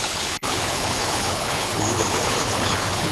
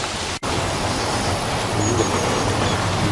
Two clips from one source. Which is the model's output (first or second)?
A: first